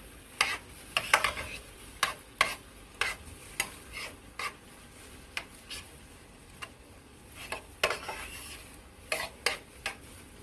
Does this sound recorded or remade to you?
recorded